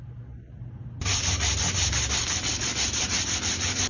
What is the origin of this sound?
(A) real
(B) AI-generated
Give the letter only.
A